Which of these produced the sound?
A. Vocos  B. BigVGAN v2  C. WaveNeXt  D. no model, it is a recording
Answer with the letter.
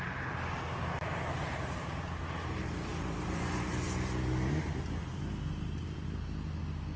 D